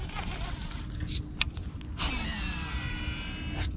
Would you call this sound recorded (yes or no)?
yes